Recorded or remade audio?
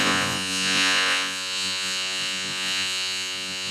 remade